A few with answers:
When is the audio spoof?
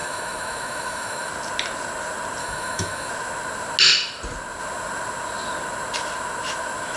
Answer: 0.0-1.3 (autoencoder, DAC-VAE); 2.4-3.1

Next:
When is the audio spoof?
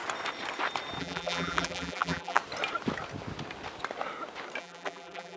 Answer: 1.0-2.4 (vocoder, BigVGAN v2); 4.6-5.4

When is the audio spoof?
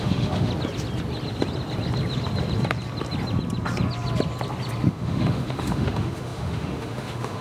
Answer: 0.0-0.5 (autoencoder, DAC-VAE); 4.9-7.4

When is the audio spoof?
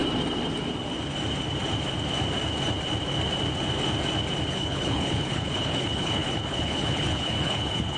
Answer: 4.5-8.0 (codec, HILCodec)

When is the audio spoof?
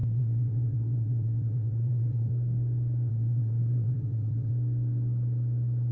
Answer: 0.0-2.3 (vocoder, WaveNeXt); 3.1-4.5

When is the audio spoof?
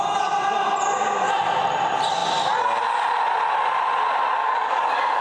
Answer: 4.4-5.2 (codec, DAC)